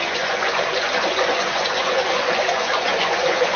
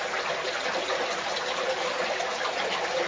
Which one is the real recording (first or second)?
second